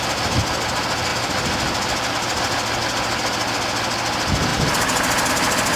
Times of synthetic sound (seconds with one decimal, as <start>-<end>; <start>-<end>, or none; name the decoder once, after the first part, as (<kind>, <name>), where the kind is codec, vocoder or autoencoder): 1.1-2.1 (vocoder, BigVGAN v2)